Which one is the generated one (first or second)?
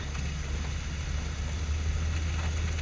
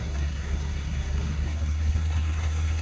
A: second